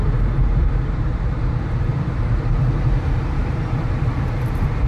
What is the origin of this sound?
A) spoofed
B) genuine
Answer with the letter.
A